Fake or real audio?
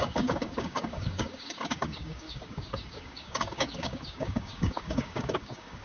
fake